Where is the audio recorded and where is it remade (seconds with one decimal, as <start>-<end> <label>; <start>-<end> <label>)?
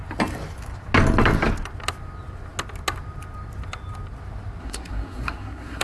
0.0-4.6 recorded; 4.6-5.8 remade